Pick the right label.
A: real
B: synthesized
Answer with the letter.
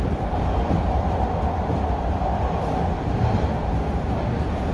A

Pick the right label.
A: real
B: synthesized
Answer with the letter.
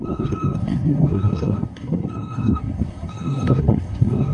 B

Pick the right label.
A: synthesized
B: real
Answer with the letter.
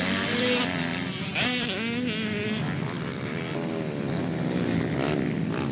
B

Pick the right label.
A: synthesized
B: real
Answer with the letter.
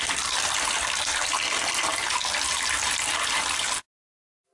B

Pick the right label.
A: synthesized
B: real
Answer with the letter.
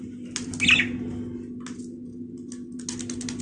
B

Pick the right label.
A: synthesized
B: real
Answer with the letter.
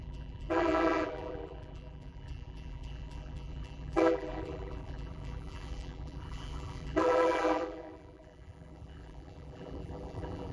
A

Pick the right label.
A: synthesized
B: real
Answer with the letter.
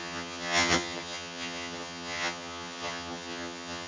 A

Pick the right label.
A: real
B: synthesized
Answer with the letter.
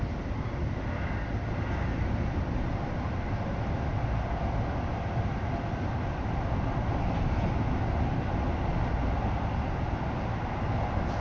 A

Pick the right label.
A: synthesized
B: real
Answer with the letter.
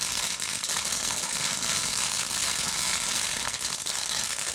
A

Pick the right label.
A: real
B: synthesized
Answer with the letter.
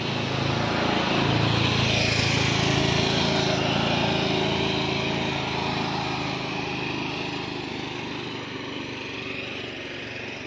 A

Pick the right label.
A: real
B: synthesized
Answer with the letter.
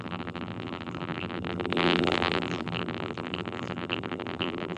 B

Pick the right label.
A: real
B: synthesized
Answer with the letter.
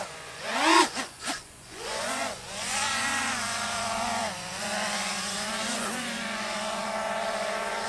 B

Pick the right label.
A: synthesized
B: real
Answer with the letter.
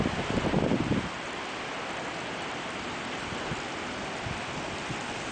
B